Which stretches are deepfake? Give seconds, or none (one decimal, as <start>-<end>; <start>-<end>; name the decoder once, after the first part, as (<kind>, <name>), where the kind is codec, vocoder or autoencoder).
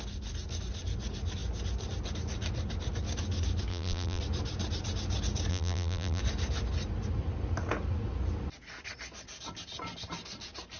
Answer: 3.7-4.2 (vocoder, BigVGAN v2); 5.5-6.2